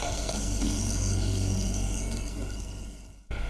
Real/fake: fake